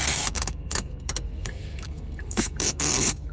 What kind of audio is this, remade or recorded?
remade